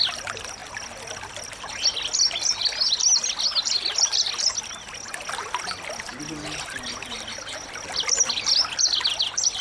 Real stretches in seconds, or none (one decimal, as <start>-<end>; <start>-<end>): 0.0-9.6